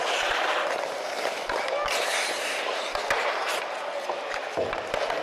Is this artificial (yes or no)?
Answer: no